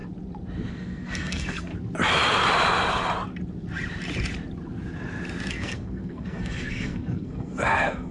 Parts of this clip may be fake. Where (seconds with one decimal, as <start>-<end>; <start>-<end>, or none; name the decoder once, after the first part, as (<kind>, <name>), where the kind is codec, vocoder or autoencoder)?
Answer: 0.7-1.7 (codec, SNAC); 5.5-8.1